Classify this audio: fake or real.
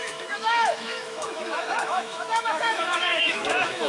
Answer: fake